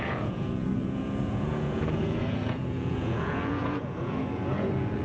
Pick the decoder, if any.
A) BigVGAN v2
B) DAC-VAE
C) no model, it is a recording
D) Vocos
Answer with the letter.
D